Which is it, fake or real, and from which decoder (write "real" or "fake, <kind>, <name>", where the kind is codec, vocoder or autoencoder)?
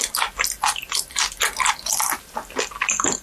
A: real